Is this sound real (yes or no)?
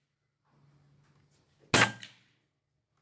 yes